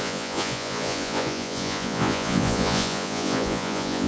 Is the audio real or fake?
fake